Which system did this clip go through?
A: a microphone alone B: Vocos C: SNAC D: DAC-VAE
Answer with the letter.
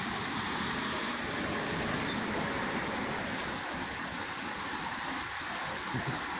A